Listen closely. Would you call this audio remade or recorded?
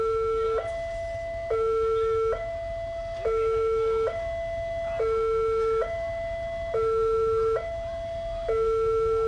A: recorded